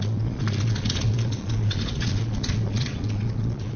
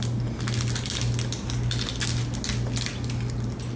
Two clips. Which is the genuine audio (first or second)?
second